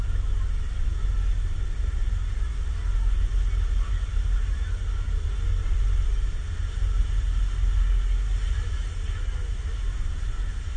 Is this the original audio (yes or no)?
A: yes